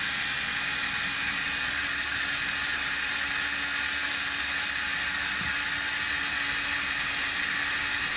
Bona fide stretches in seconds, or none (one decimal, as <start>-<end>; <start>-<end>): 0.0-2.7; 3.3-8.2